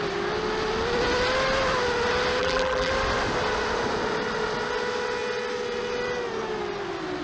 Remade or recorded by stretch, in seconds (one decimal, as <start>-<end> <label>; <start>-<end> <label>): 0.0-2.4 recorded; 2.4-2.9 remade; 2.9-7.2 recorded